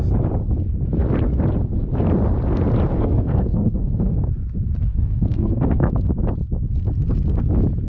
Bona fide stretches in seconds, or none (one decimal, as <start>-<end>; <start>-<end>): 0.0-2.9; 4.3-4.8; 6.1-7.9